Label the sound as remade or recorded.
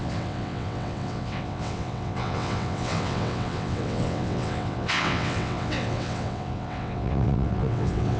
remade